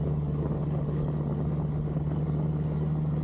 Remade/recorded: recorded